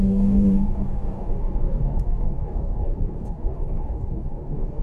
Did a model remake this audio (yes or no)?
yes